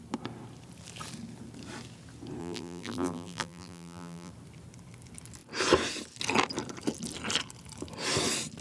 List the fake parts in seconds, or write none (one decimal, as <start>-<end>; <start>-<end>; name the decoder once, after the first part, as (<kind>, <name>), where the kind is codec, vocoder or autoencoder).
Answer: 2.4-4.3 (vocoder, BigVGAN v2)